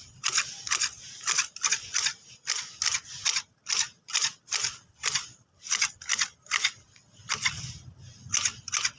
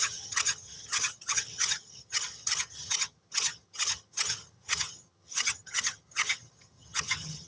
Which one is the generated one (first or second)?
second